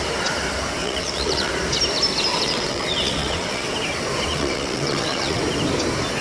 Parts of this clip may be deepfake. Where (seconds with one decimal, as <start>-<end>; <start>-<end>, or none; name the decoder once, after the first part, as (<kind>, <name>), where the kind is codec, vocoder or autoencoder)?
0.8-1.5 (vocoder, WaveNeXt); 2.3-3.7; 4.3-5.4